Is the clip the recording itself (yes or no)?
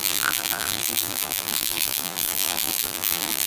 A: no